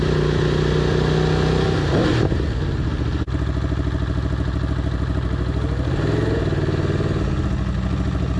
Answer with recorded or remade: recorded